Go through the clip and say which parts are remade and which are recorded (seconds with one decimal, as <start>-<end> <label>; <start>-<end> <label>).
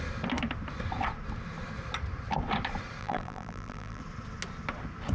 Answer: 0.0-3.0 recorded; 3.0-4.0 remade; 4.0-5.1 recorded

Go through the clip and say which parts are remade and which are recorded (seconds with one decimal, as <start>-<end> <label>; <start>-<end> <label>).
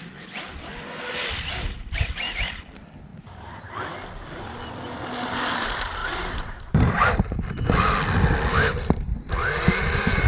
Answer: 0.0-3.1 recorded; 3.1-3.7 remade; 3.7-6.0 recorded; 6.0-6.7 remade; 6.7-8.5 recorded; 8.5-9.0 remade; 9.0-10.3 recorded